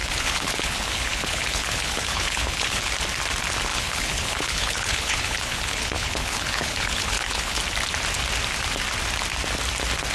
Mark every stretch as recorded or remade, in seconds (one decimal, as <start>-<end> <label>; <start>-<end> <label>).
0.0-2.9 remade; 2.9-3.7 recorded; 3.7-7.6 remade; 7.6-10.1 recorded